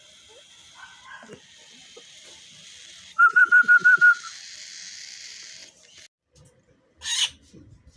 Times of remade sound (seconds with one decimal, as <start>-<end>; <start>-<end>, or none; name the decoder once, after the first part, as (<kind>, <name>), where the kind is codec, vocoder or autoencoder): 1.8-4.3 (vocoder, BigVGAN v2)